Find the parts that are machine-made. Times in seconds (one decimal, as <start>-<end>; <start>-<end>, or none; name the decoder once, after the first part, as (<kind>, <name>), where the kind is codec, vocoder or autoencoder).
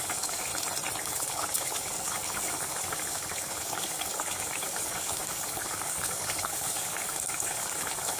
0.0-0.5 (codec, DAC); 1.0-8.2